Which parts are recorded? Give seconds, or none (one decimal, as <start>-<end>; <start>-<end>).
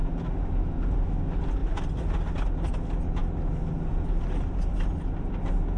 0.0-5.8